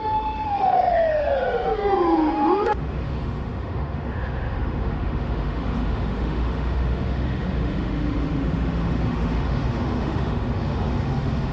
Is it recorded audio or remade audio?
remade